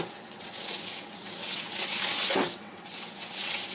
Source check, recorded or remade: remade